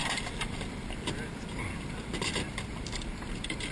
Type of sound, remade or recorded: recorded